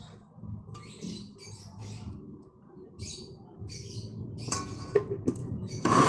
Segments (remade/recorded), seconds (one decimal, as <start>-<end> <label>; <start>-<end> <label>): 0.0-1.8 recorded; 1.8-2.6 remade; 2.6-3.5 recorded; 3.5-4.2 remade; 4.2-5.4 recorded; 5.4-6.1 remade